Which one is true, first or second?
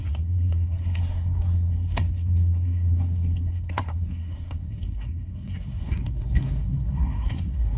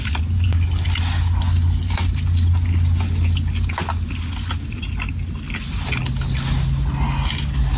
second